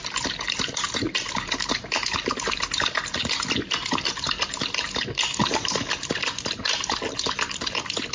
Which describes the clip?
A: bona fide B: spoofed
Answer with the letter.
A